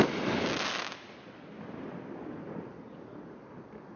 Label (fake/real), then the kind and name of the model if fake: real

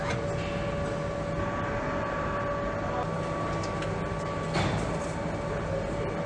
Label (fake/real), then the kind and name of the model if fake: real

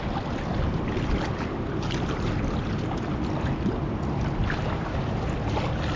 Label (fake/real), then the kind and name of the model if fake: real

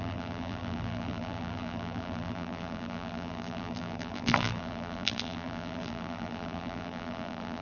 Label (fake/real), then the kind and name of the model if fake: fake, vocoder, BigVGAN v2